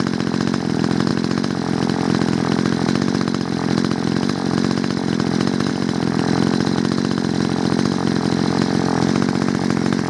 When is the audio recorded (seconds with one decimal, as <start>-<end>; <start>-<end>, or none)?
0.0-10.1